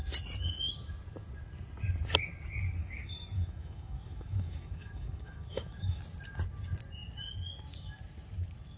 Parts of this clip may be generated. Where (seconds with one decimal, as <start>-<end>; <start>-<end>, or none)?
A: 2.8-6.0